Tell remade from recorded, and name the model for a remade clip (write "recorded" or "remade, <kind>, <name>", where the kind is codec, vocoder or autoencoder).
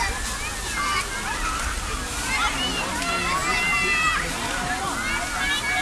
recorded